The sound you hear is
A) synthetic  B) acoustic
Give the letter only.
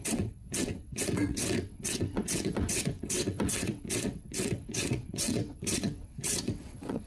A